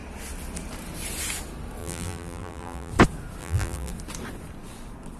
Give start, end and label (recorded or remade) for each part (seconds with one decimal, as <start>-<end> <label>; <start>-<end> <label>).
0.0-1.8 recorded; 1.8-2.9 remade; 2.9-3.4 recorded; 3.4-3.9 remade; 3.9-5.2 recorded